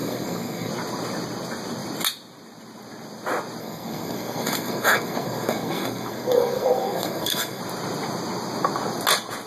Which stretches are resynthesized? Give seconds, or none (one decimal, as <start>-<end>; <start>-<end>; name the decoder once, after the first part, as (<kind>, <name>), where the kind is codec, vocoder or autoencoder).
0.0-0.7 (codec, SNAC); 3.6-7.6